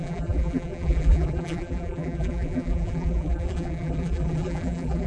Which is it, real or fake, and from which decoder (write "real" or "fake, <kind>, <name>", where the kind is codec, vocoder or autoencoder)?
fake, vocoder, BigVGAN v2